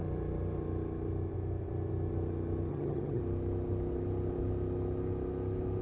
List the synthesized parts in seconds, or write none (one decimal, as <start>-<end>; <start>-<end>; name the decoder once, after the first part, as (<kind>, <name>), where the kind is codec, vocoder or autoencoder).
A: 2.7-3.2 (vocoder, HiFi-GAN)